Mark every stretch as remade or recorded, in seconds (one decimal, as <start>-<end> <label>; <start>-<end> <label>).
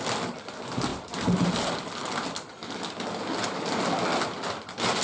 0.0-5.0 recorded